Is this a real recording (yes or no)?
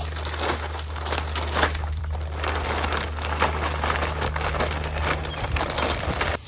yes